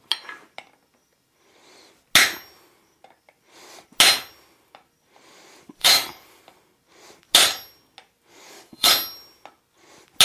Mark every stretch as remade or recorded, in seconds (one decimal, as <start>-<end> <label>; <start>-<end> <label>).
0.0-5.8 recorded; 5.8-6.4 remade; 6.4-8.3 recorded; 8.3-8.9 remade; 8.9-10.2 recorded